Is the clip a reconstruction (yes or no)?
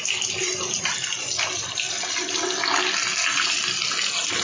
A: no